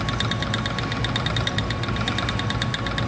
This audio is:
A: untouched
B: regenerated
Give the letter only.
A